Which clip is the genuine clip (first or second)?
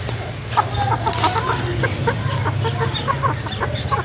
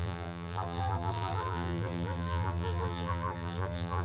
first